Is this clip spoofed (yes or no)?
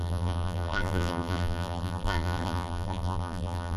yes